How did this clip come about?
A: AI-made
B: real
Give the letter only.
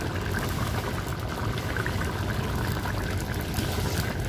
B